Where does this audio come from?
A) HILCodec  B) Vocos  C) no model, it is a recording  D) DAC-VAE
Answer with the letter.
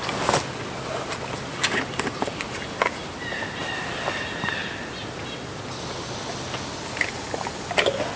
C